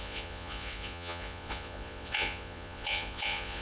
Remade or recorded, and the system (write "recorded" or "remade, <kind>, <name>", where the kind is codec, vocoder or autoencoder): remade, vocoder, Vocos